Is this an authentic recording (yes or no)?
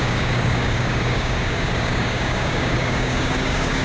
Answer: no